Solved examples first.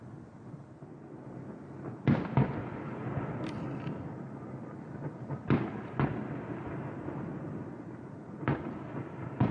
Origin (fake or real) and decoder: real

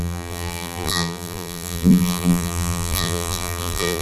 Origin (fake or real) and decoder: fake, vocoder, BigVGAN v2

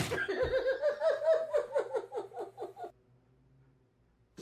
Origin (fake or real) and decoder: real